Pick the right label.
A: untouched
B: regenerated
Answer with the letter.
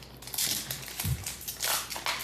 A